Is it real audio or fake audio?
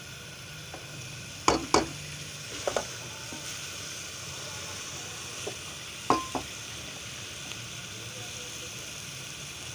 real